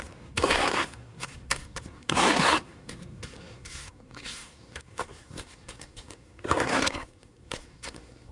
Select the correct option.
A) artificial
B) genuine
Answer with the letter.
A